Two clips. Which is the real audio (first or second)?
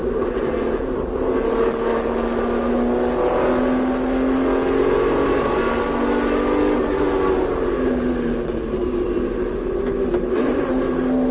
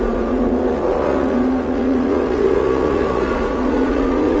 first